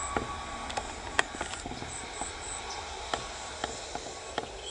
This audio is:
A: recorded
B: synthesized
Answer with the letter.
A